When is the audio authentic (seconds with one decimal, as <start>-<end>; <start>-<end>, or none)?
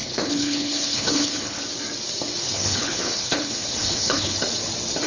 1.6-2.4; 4.4-5.1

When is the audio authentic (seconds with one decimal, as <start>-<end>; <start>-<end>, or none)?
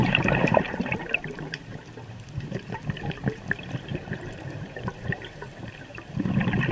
2.8-3.9; 5.4-6.7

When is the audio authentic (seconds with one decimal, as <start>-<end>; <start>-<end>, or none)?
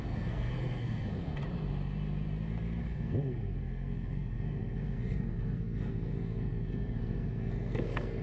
1.4-2.8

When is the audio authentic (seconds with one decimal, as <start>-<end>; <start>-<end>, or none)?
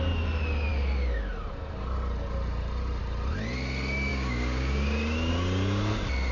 0.0-4.1; 5.3-6.3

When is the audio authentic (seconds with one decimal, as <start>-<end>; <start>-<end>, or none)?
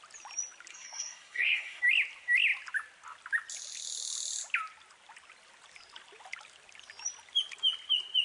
0.0-0.7; 1.8-8.2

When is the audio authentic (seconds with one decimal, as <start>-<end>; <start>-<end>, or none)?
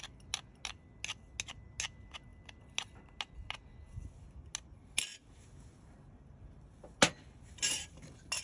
0.0-8.4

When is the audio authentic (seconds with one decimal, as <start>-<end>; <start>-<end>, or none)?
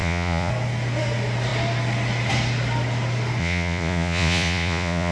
0.5-3.4